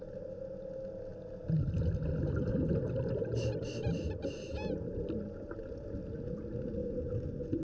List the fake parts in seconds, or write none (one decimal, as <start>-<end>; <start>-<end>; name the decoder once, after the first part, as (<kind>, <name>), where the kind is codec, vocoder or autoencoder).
6.8-7.6 (vocoder, Vocos)